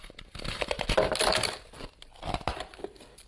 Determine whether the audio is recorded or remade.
recorded